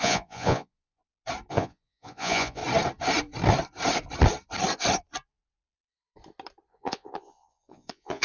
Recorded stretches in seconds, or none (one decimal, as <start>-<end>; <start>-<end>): 1.0-1.5; 2.6-6.7